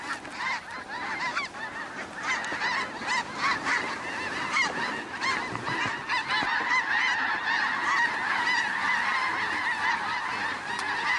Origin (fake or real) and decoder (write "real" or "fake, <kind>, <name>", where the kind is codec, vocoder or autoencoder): real